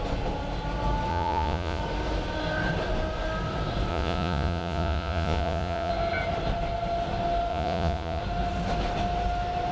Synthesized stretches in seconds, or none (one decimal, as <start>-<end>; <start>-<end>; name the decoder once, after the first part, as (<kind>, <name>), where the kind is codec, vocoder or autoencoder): 1.1-1.8 (vocoder, Vocos); 3.9-5.9; 7.5-8.2